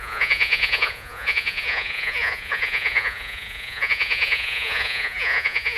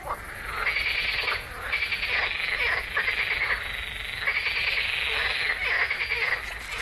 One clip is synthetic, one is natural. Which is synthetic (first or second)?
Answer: first